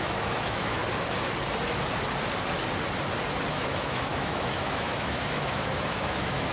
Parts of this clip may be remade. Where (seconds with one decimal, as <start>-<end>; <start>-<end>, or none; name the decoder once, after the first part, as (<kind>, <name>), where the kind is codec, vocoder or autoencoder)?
0.0-0.8 (autoencoder, DAC-VAE); 3.5-6.5

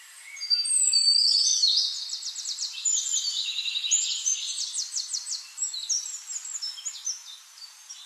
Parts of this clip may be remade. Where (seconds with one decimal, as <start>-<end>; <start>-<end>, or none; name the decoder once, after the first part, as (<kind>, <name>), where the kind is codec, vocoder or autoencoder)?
0.0-1.5 (vocoder, BigVGAN v2); 2.4-4.8; 7.4-8.1

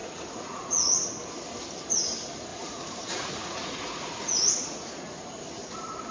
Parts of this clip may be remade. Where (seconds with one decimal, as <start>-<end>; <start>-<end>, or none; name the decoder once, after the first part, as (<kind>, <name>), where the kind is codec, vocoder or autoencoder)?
0.0-1.1 (vocoder, Vocos); 2.5-5.3

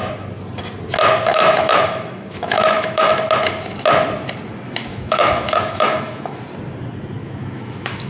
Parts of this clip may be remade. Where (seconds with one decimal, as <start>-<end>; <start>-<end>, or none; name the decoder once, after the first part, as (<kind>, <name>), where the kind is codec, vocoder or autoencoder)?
1.3-3.1 (autoencoder, DAC-VAE); 4.9-6.4; 7.2-8.1

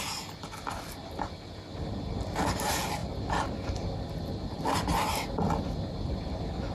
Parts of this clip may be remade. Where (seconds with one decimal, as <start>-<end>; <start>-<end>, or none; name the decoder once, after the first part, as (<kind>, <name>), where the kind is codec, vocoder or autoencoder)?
none